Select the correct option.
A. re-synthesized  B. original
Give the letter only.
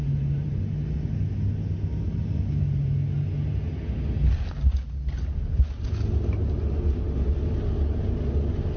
B